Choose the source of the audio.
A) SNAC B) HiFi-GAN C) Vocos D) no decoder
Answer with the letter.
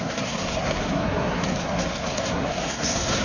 A